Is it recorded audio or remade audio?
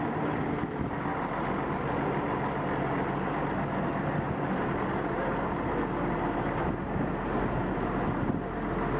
recorded